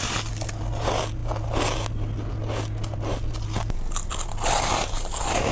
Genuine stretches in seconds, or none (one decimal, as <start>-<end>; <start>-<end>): 0.0-5.5